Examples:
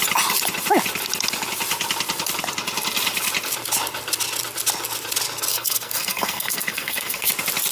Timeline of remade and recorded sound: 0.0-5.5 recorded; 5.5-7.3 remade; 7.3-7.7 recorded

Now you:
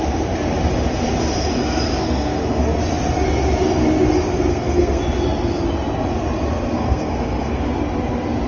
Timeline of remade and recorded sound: 0.0-2.0 recorded; 2.0-2.8 remade; 2.8-4.5 recorded; 4.5-5.0 remade; 5.0-6.8 recorded; 6.8-7.6 remade; 7.6-8.5 recorded

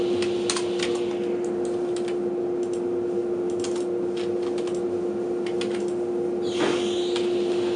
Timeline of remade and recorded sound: 0.0-7.8 recorded

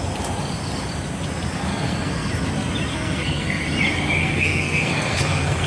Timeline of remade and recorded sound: 0.0-1.7 recorded; 1.7-2.3 remade; 2.3-2.9 recorded; 2.9-3.6 remade; 3.6-4.2 recorded; 4.2-5.7 remade

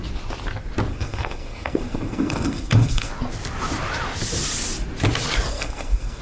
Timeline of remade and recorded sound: 0.0-0.9 recorded; 0.9-3.1 remade; 3.1-5.5 recorded; 5.5-6.2 remade